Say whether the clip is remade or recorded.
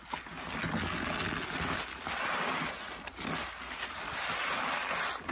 recorded